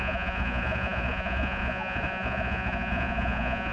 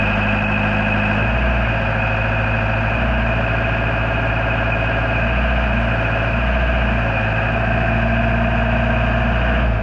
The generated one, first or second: first